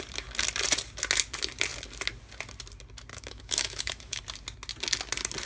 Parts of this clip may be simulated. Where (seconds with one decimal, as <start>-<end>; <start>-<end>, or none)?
3.1-4.2